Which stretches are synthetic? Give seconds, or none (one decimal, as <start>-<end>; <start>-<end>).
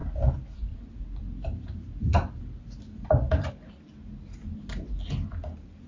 0.0-3.5